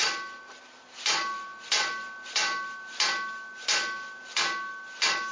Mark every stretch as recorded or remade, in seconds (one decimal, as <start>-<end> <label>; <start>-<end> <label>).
0.0-5.3 recorded